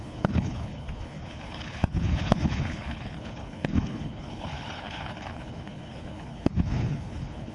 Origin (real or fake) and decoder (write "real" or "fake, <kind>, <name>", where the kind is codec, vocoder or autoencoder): fake, codec, HILCodec